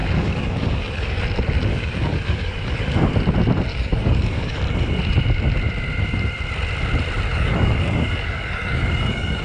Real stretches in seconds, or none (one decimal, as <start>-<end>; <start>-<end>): 1.2-1.7; 3.1-3.7; 4.6-7.3